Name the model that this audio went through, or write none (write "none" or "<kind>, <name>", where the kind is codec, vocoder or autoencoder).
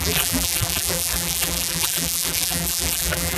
vocoder, BigVGAN v2